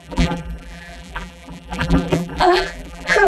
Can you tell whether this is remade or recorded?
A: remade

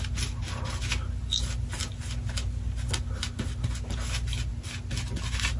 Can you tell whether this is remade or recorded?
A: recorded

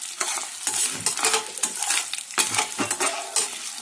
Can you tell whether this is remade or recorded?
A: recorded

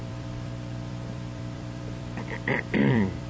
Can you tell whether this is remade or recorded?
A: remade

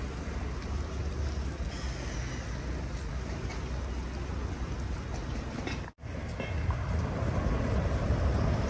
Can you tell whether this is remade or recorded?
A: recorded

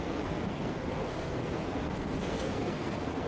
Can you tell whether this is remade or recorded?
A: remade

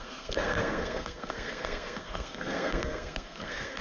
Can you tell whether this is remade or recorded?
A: remade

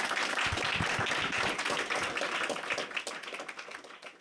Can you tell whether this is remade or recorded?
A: recorded